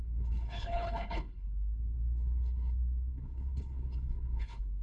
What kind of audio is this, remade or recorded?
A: remade